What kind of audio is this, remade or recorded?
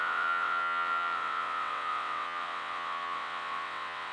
remade